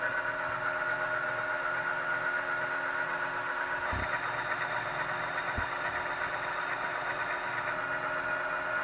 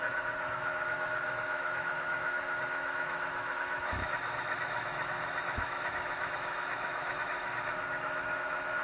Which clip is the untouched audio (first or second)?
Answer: first